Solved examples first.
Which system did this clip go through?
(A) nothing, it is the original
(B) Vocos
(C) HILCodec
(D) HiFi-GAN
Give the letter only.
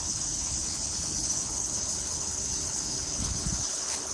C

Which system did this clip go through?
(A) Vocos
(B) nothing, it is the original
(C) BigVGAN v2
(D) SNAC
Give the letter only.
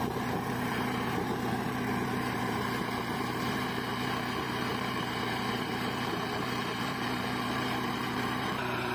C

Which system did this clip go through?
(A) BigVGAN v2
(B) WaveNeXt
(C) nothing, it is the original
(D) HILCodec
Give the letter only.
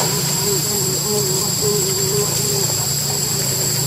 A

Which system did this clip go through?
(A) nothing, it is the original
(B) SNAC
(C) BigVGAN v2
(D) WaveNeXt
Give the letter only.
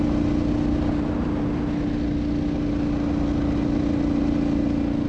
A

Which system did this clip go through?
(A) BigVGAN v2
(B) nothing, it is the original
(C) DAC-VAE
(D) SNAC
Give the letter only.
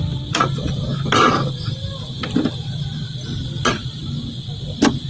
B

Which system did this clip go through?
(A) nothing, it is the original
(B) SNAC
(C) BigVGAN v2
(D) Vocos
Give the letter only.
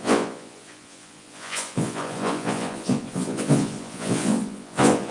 D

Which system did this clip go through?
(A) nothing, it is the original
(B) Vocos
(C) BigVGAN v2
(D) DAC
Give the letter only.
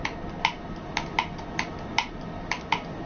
A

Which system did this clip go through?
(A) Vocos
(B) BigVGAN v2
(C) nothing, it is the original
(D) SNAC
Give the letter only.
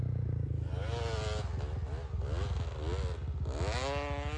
C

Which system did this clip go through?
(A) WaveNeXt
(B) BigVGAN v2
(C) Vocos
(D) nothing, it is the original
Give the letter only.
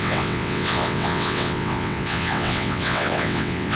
A